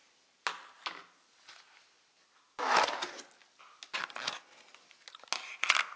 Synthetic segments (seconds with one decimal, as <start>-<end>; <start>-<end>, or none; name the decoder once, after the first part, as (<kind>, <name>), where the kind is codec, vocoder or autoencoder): none